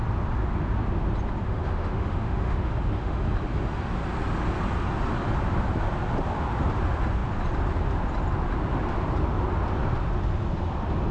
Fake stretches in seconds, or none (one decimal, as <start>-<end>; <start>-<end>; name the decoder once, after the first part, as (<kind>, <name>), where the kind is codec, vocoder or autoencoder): 1.4-3.2 (autoencoder, DAC-VAE)